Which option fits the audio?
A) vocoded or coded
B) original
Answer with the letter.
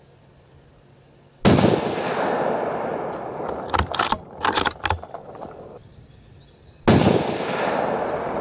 B